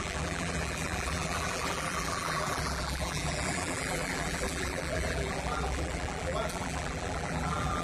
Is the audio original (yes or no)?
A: no